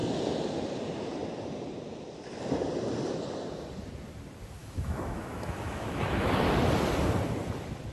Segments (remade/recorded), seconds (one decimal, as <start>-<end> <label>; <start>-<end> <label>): 0.0-4.6 recorded; 4.6-6.3 remade; 6.3-7.9 recorded